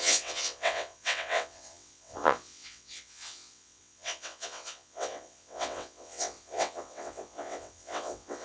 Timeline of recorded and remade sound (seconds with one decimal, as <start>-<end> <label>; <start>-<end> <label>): 0.0-8.4 remade